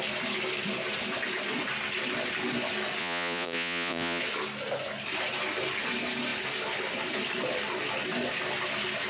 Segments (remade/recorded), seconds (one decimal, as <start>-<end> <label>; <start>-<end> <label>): 0.0-3.0 recorded; 3.0-4.2 remade; 4.2-9.1 recorded

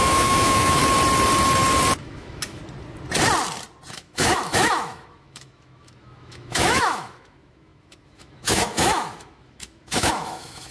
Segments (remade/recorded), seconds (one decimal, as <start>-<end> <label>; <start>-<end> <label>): 0.0-0.8 remade; 0.8-2.0 recorded; 2.0-2.6 remade; 2.6-3.9 recorded; 3.9-10.7 remade

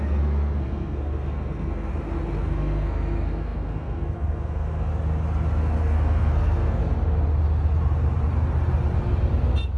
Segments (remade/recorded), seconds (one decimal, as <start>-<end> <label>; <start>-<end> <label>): 0.0-1.9 remade; 1.9-2.4 recorded; 2.4-4.9 remade; 4.9-5.6 recorded; 5.6-6.8 remade; 6.8-9.8 recorded

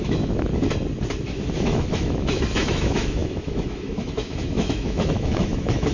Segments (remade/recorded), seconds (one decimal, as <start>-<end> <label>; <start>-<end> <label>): 0.0-0.5 remade; 0.5-1.2 recorded; 1.2-5.9 remade

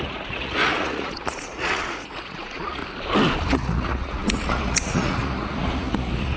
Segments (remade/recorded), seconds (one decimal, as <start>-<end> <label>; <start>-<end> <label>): 0.0-2.8 remade; 2.8-3.5 recorded; 3.5-6.4 remade

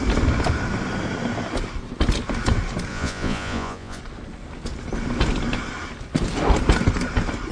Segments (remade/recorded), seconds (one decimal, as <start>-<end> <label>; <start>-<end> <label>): 0.0-2.9 recorded; 2.9-4.0 remade; 4.0-7.5 recorded

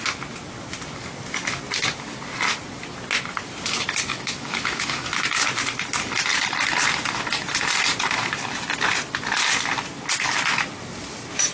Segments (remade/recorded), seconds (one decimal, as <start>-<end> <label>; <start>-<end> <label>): 0.0-4.1 recorded; 4.1-5.1 remade; 5.1-11.5 recorded